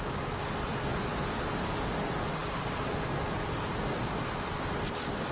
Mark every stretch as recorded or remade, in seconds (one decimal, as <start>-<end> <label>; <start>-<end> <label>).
0.0-5.3 recorded